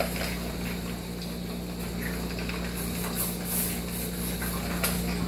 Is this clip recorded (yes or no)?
yes